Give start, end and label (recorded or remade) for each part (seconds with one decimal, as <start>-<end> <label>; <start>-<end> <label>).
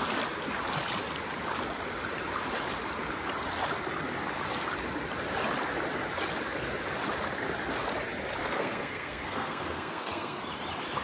0.0-8.4 recorded; 8.4-10.4 remade; 10.4-11.0 recorded